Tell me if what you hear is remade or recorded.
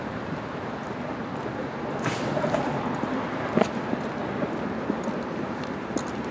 recorded